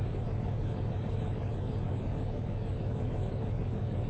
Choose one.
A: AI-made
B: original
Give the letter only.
A